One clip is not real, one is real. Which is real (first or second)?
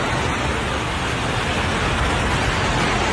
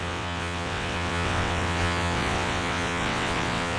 first